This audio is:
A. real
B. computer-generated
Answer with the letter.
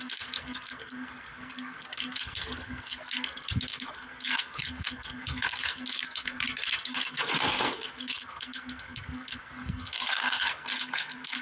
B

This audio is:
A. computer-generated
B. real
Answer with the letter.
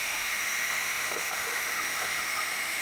A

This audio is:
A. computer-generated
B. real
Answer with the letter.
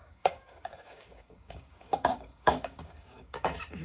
A